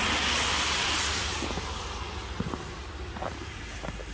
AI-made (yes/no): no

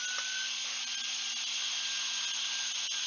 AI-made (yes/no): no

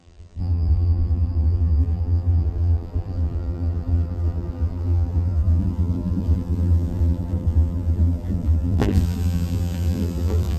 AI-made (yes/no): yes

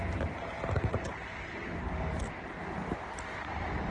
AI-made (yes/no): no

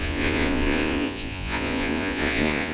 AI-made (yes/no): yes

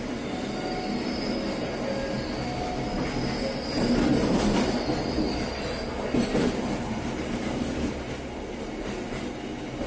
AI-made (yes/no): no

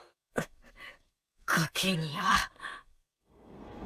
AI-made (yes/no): yes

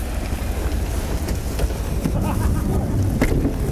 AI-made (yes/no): no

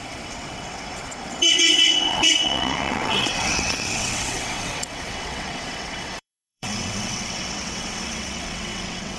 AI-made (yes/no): yes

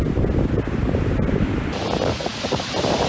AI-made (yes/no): no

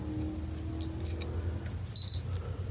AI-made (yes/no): no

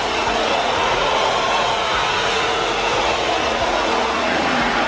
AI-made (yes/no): yes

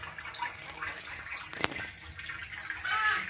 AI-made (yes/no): no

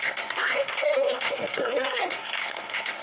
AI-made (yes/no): yes